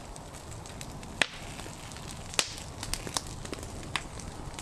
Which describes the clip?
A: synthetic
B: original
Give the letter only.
B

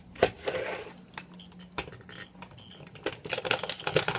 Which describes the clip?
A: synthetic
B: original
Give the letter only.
B